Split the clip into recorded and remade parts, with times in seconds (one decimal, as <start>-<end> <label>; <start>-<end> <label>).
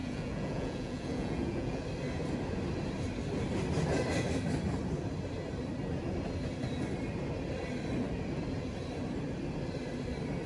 0.0-1.8 remade; 1.8-10.5 recorded